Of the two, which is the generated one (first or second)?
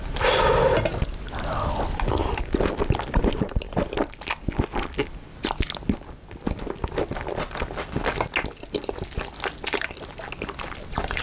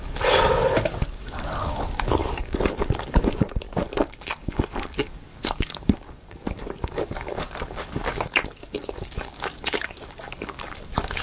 second